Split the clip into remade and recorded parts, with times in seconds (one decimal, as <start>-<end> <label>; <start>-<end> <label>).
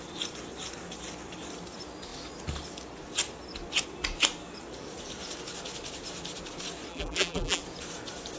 0.0-6.9 recorded; 6.9-7.6 remade; 7.6-8.4 recorded